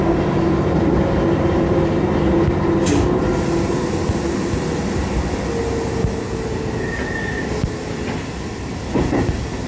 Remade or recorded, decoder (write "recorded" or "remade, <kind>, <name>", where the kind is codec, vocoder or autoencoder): recorded